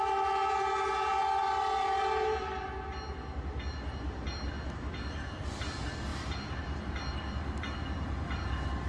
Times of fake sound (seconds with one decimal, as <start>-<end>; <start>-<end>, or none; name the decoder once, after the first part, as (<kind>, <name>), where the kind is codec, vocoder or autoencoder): 1.4-2.0 (vocoder, BigVGAN v2)